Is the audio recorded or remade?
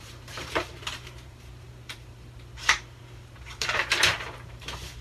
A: remade